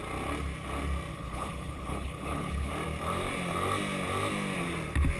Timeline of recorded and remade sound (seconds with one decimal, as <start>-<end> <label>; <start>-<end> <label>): 0.0-1.1 recorded; 1.1-2.7 remade; 2.7-5.2 recorded